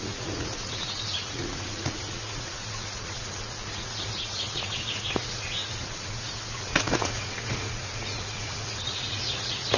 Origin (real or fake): fake